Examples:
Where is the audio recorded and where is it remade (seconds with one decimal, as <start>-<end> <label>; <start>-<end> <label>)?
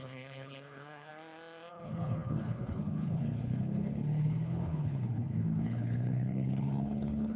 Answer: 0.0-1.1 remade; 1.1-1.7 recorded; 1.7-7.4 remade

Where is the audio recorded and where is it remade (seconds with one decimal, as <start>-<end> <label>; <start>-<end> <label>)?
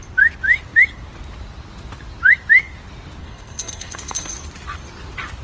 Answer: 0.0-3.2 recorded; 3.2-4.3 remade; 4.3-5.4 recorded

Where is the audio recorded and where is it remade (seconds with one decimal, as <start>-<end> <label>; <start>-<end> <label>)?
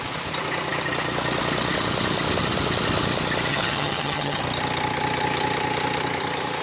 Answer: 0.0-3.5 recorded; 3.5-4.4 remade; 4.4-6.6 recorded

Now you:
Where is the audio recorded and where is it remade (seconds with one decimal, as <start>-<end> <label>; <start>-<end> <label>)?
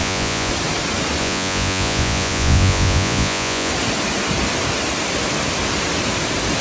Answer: 0.0-0.5 remade; 0.5-1.2 recorded; 1.2-3.7 remade; 3.7-6.6 recorded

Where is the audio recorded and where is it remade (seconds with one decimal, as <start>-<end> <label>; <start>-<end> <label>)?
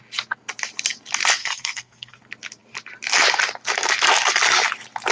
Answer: 0.0-1.4 recorded; 1.4-2.2 remade; 2.2-5.1 recorded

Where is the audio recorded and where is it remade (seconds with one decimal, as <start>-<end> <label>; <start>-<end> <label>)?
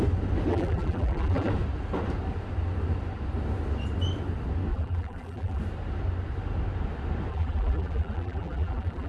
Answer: 0.0-0.5 recorded; 0.5-1.5 remade; 1.5-4.7 recorded; 4.7-5.6 remade; 5.6-7.3 recorded; 7.3-9.1 remade